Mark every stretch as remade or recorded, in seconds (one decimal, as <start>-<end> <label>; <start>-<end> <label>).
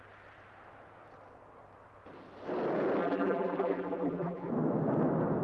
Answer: 0.0-3.0 recorded; 3.0-4.5 remade; 4.5-5.4 recorded